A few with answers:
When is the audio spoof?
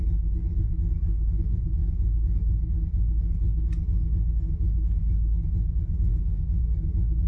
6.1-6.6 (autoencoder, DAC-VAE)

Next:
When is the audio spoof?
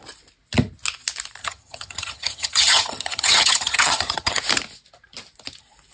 1.4-4.4 (vocoder, HiFi-GAN)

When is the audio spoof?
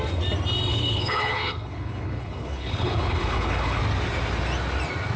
0.7-3.8 (codec, HILCodec)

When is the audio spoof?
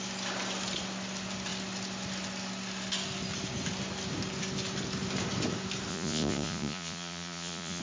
5.9-7.8 (vocoder, Vocos)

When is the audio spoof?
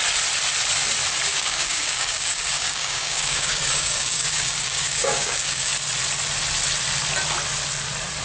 1.3-5.7 (codec, DAC)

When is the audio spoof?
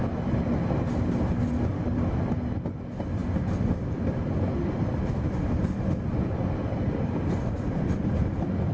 none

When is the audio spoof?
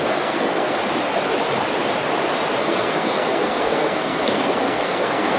0.0-0.8 (codec, SNAC); 2.6-5.4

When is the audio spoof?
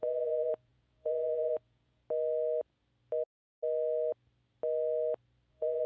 0.0-2.0 (vocoder, Vocos); 5.5-5.9